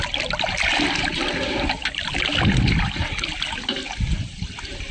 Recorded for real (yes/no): yes